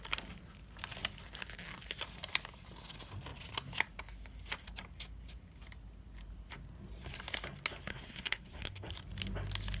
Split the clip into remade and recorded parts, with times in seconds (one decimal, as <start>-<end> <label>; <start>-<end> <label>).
0.0-7.9 recorded; 7.9-8.9 remade; 8.9-9.8 recorded